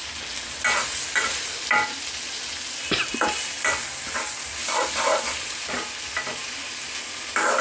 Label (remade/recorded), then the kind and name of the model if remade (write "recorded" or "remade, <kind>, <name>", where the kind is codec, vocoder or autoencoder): recorded